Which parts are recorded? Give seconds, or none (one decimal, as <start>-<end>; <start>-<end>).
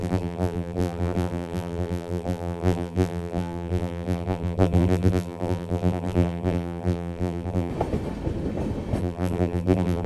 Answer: 7.7-9.0